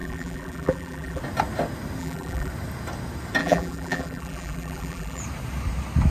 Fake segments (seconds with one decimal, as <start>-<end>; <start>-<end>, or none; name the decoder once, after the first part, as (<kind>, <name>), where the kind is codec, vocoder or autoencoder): 0.0-1.2 (vocoder, BigVGAN v2); 2.0-2.5; 3.4-5.2

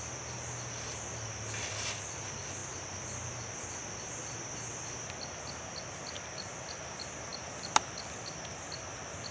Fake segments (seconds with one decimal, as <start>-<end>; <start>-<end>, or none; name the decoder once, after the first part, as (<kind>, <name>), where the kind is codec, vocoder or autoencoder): none